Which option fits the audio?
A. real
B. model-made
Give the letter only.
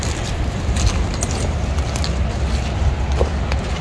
A